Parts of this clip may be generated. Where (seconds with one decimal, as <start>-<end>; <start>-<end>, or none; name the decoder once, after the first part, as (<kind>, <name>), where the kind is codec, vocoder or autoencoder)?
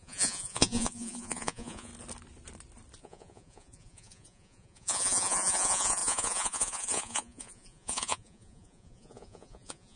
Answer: 0.0-1.9 (vocoder, Vocos); 3.0-10.0